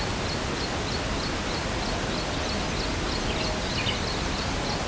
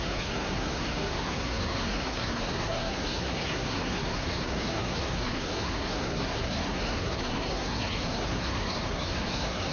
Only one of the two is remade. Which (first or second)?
second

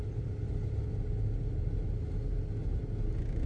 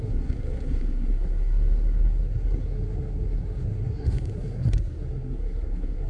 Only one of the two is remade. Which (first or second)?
second